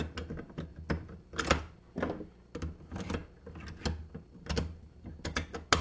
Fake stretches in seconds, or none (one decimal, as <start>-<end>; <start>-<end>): none